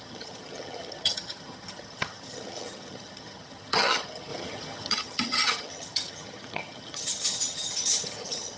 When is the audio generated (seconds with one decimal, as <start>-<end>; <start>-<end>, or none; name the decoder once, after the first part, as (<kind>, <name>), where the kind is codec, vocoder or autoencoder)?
0.0-8.6 (vocoder, HiFi-GAN)